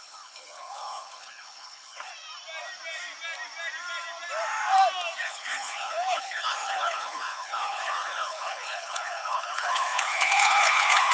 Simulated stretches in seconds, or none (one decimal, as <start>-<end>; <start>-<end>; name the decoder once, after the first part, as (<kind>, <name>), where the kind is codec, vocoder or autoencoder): 0.0-2.1 (codec, HILCodec); 5.2-11.1

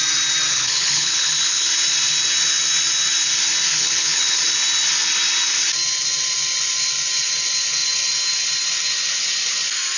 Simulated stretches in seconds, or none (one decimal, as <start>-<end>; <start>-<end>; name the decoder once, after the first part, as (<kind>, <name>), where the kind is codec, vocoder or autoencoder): 0.5-1.7 (codec, HILCodec); 3.7-4.4

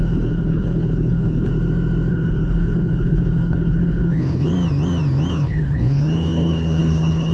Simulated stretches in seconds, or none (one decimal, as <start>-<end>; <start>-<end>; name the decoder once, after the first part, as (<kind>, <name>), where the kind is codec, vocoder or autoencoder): 0.0-1.5 (codec, HILCodec); 2.1-4.5; 5.3-7.3

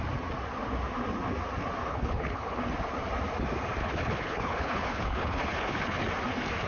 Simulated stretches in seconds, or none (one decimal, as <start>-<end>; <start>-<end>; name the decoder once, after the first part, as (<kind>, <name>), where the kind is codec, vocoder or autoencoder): 1.9-2.6 (codec, HILCodec); 3.8-6.0

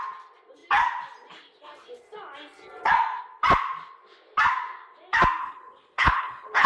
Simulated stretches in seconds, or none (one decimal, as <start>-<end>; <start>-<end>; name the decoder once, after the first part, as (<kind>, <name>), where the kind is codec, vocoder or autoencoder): 5.4-6.7 (codec, HILCodec)